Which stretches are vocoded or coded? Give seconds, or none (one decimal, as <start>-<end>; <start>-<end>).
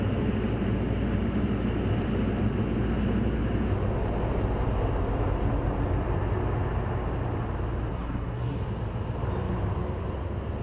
7.9-8.6